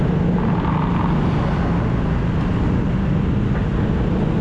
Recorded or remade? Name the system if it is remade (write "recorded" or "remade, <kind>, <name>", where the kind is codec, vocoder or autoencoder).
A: recorded